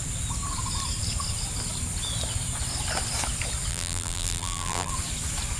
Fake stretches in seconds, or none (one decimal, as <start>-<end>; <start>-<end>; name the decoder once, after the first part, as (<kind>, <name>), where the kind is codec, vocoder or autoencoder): 3.7-4.9 (vocoder, BigVGAN v2)

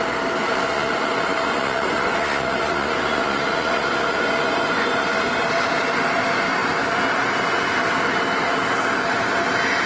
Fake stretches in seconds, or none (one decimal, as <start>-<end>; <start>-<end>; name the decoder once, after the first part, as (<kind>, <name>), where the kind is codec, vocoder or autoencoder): 0.4-5.2 (vocoder, Vocos)

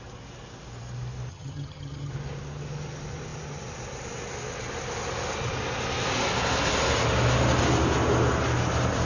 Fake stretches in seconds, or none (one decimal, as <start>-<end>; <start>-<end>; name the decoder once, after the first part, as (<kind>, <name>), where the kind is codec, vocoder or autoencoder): 1.3-2.1 (vocoder, HiFi-GAN)

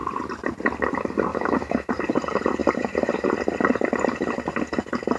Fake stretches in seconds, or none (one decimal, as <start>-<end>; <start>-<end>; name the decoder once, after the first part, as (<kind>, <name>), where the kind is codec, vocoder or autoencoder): 1.3-1.9 (autoencoder, DAC-VAE)

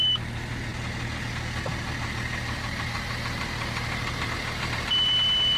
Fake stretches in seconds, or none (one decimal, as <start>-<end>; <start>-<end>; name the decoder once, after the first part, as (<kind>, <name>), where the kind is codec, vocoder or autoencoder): 0.0-5.6 (vocoder, BigVGAN v2)

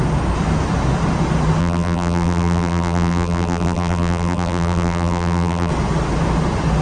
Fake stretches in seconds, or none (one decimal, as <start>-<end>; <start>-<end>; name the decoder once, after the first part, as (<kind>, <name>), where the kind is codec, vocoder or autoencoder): 1.6-5.7 (vocoder, BigVGAN v2)

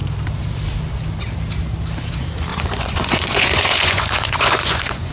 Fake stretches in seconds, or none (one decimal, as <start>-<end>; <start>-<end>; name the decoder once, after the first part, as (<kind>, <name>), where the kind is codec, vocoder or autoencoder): 2.5-5.1 (vocoder, Vocos)